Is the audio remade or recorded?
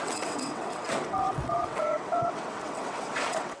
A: remade